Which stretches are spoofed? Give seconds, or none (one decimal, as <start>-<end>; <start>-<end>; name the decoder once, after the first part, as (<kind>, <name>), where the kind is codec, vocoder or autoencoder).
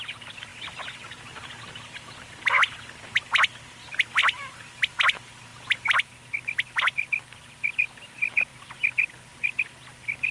4.2-5.0 (vocoder, BigVGAN v2); 5.5-7.9